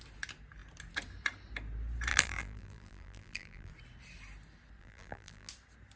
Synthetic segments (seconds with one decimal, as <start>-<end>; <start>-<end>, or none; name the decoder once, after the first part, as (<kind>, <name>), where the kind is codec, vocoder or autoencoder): 2.1-3.7 (vocoder, BigVGAN v2); 4.8-5.5